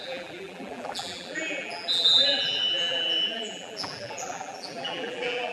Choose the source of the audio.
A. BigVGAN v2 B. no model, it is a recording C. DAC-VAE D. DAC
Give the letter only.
A